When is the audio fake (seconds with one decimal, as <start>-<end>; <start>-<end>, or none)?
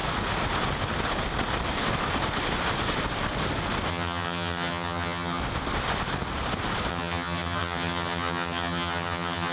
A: 3.9-5.4; 6.9-9.5